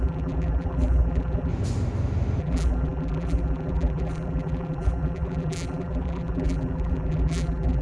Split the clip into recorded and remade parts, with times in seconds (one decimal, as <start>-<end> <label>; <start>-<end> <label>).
0.0-1.5 remade; 1.5-2.4 recorded; 2.4-7.8 remade